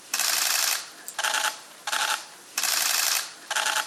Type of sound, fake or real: real